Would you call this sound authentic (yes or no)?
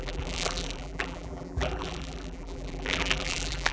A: no